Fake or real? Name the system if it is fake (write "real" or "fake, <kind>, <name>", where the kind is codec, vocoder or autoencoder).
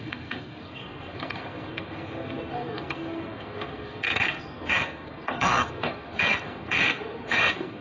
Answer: fake, codec, SNAC